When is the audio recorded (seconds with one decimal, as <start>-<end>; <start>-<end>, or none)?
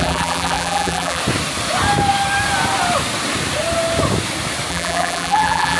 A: 1.2-4.7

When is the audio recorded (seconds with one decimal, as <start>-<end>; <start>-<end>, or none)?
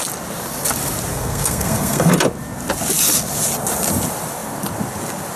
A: 0.0-1.1; 2.1-5.4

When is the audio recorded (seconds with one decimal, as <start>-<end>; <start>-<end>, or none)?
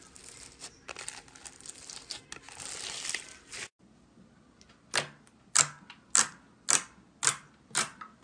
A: 0.0-8.2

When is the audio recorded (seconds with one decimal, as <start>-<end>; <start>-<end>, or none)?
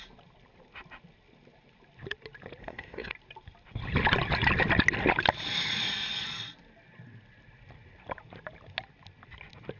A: 0.0-2.6; 3.1-9.8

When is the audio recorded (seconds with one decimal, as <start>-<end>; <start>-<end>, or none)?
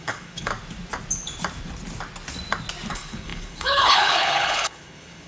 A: 0.5-2.9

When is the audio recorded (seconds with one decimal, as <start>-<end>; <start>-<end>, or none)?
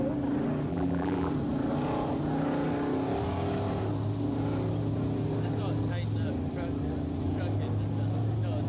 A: 0.0-0.7; 1.3-8.7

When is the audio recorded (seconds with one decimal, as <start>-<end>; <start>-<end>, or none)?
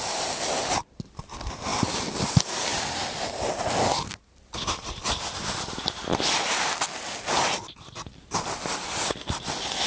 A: 0.0-9.9